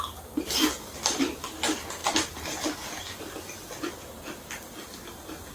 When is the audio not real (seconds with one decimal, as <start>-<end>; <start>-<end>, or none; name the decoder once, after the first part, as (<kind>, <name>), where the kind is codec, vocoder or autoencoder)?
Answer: none